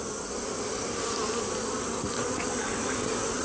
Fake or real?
real